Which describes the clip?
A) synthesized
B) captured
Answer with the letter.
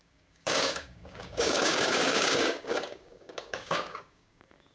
A